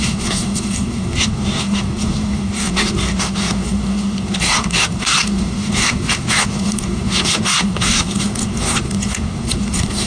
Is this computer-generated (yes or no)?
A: yes